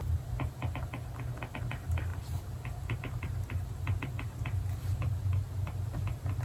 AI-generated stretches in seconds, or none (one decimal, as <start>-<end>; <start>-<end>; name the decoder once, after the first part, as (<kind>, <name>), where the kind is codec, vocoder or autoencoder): 0.0-0.9 (vocoder, BigVGAN v2); 1.5-6.4

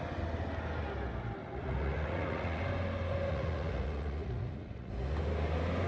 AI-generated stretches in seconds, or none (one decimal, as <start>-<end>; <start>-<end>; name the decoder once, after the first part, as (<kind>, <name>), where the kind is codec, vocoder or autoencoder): 1.4-2.6 (vocoder, Vocos); 3.3-4.9

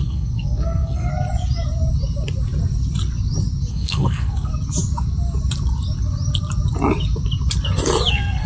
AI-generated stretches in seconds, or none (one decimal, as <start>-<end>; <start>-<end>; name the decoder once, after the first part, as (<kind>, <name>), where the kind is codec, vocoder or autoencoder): 0.0-1.1 (codec, SNAC); 3.7-4.5; 8.1-8.5